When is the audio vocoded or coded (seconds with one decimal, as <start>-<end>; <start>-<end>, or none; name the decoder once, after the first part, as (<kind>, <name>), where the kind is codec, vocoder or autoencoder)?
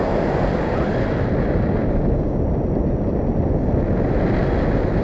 none